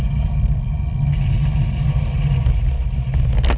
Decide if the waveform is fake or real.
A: real